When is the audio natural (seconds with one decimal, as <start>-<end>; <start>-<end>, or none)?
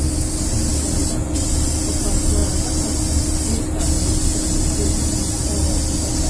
0.0-6.3